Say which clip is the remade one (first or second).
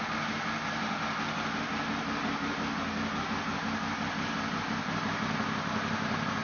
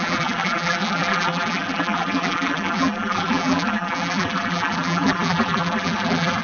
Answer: second